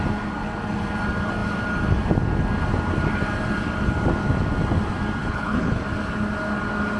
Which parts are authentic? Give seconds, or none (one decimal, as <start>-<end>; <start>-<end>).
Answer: 0.0-5.2; 5.8-7.0